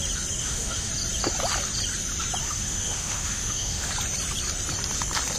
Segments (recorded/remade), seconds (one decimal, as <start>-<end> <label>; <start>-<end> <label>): 0.0-0.4 recorded; 0.4-0.9 remade; 0.9-2.4 recorded; 2.4-3.9 remade; 3.9-5.4 recorded